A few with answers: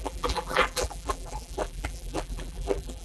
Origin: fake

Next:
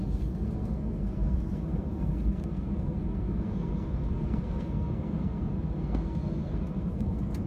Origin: fake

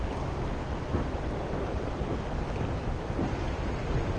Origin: real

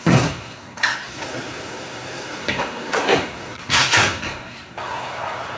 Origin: fake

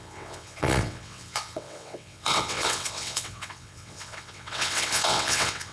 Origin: fake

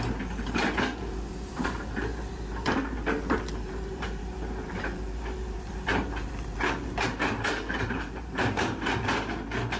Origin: fake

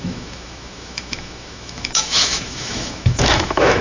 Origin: fake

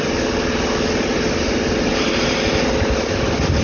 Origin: real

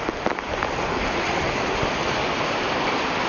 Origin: real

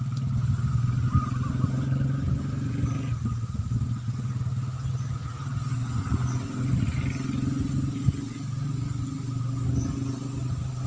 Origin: real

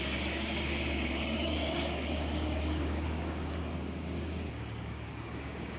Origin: fake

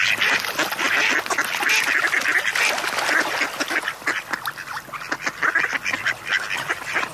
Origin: real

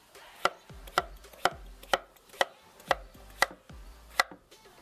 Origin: real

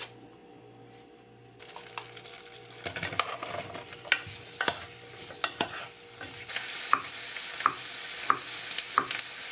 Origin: real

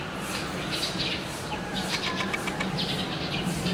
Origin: real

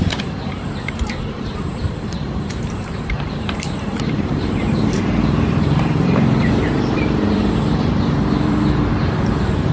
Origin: fake